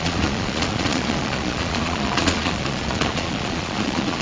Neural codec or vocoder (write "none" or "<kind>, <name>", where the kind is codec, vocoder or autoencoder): vocoder, Vocos